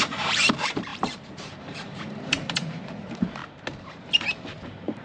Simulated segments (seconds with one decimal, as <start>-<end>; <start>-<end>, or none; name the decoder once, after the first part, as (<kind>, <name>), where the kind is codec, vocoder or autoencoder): 0.0-3.4 (vocoder, BigVGAN v2); 3.9-5.0